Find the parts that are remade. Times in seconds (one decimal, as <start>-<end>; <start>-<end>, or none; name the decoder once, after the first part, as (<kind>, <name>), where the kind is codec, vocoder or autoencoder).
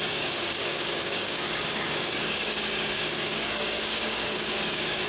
0.0-5.1 (codec, DAC)